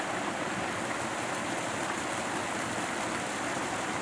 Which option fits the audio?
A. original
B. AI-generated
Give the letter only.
A